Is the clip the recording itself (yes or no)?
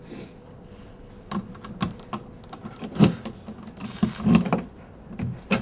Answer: yes